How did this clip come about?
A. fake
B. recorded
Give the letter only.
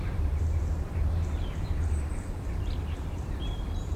A